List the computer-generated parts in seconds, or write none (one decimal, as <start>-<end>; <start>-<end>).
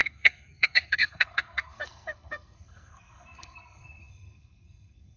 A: 0.0-5.2